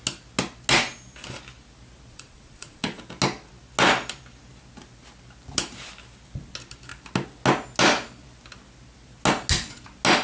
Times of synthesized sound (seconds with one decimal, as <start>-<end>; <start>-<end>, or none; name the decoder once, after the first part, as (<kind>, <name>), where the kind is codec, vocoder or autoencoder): 2.1-3.0 (vocoder, Vocos)